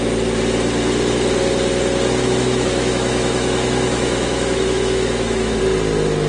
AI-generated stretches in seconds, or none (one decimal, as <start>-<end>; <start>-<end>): 2.2-5.6